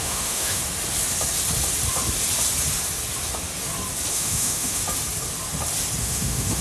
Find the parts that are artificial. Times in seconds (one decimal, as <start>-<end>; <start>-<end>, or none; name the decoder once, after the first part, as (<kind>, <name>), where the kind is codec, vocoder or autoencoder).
0.0-0.6 (autoencoder, DAC-VAE); 4.1-4.8; 6.0-6.6